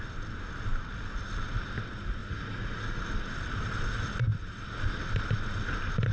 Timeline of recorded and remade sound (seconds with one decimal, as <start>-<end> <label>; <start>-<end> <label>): 0.0-2.2 recorded; 2.2-3.0 remade; 3.0-6.1 recorded